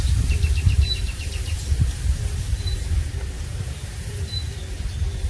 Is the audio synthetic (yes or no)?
yes